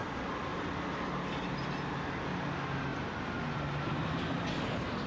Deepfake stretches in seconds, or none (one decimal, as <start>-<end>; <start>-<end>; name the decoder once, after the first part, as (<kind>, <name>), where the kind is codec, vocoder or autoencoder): none